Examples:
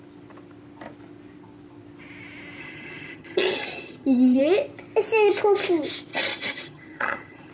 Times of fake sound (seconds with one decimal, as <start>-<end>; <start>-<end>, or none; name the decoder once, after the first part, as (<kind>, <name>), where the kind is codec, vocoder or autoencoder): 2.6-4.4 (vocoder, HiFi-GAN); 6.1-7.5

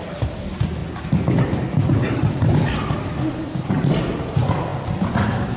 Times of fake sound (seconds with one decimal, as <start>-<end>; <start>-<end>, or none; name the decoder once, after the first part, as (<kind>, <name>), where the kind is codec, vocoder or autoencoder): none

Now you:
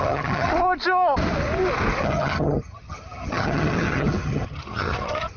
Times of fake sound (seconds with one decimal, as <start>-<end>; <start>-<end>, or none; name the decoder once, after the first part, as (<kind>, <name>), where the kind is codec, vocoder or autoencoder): 0.0-0.5 (vocoder, HiFi-GAN); 2.0-5.4